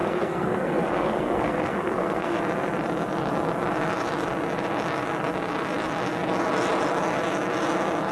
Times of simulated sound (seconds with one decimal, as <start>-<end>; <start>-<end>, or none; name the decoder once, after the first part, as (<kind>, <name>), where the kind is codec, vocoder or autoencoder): 0.0-2.4 (codec, SNAC)